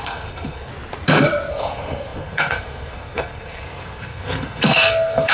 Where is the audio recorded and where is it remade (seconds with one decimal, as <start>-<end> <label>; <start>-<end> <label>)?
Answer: 0.0-0.7 remade; 0.7-1.5 recorded; 1.5-5.3 remade